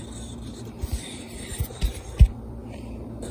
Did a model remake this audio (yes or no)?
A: yes